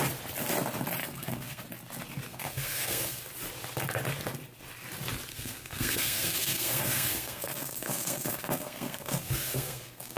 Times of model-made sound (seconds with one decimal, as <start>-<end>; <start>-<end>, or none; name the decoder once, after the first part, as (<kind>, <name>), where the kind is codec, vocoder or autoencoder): 1.0-1.6 (codec, SNAC); 2.3-3.2; 5.3-10.2